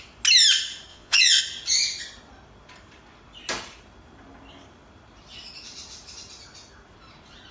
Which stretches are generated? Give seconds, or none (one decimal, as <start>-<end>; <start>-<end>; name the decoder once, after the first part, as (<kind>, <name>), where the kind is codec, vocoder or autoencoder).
0.9-1.4 (vocoder, Vocos)

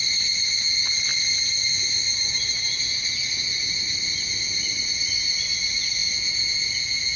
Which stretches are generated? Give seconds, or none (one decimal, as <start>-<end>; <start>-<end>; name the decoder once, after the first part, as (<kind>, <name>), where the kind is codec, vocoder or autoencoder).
6.0-7.2 (vocoder, Vocos)

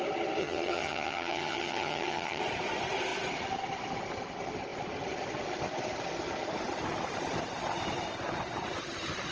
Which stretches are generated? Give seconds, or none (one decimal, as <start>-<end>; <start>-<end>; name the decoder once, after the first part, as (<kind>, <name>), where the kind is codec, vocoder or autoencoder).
0.4-2.4 (vocoder, HiFi-GAN)